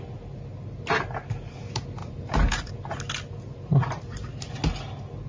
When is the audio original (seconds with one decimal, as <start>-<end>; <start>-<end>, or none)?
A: 0.0-2.0; 2.7-5.3